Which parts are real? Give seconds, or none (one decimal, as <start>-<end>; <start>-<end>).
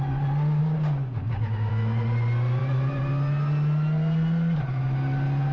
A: 0.0-0.6; 1.7-5.5